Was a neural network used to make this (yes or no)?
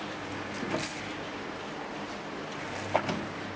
no